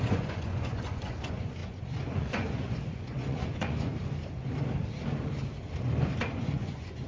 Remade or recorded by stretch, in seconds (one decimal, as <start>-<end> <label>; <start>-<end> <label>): 0.0-3.9 remade; 3.9-6.3 recorded; 6.3-7.1 remade

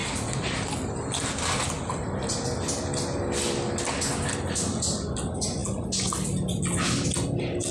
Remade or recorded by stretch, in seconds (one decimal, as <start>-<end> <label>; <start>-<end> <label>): 0.0-7.7 recorded

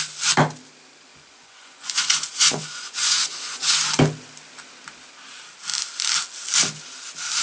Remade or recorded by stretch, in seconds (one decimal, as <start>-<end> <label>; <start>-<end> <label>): 0.0-1.1 recorded; 1.1-3.7 remade; 3.7-7.4 recorded

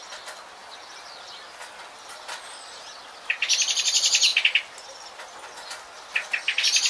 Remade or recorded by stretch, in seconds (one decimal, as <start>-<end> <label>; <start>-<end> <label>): 0.0-6.9 recorded

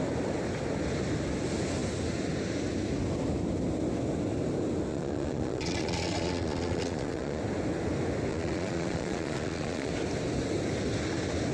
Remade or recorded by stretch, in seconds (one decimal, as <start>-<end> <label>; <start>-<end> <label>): 0.0-4.9 recorded; 4.9-7.4 remade; 7.4-8.3 recorded; 8.3-9.9 remade; 9.9-11.5 recorded